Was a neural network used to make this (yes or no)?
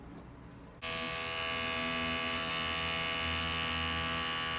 no